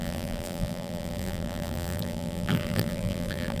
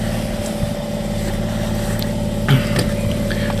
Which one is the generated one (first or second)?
first